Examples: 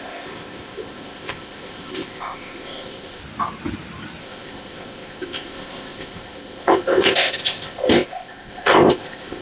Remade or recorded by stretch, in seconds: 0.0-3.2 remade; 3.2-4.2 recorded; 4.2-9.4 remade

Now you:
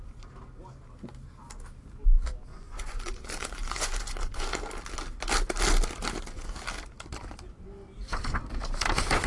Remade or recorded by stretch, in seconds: 0.0-2.5 recorded; 2.5-4.5 remade; 4.5-9.3 recorded

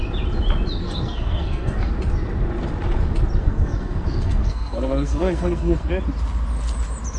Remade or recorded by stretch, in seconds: 0.0-0.8 recorded; 0.8-1.9 remade; 1.9-3.4 recorded; 3.4-5.9 remade; 5.9-7.2 recorded

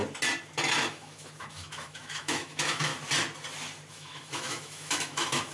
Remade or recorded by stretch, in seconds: 0.0-0.9 recorded; 0.9-2.9 remade; 2.9-3.9 recorded; 3.9-5.5 remade

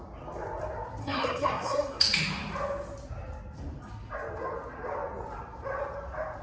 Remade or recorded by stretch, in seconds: 0.0-1.0 recorded; 1.0-2.0 remade; 2.0-6.4 recorded